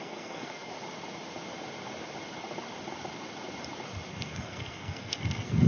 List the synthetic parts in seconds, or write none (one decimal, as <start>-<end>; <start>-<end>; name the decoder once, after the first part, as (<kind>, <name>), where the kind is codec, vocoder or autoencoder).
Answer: 0.0-0.7 (codec, SNAC); 4.1-5.7